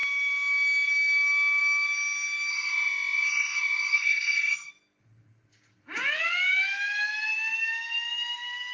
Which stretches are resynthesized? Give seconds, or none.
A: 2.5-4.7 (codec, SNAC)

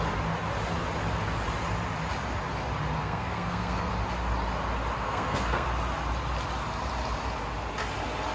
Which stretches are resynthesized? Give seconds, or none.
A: 3.0-3.9 (codec, SNAC); 5.0-5.7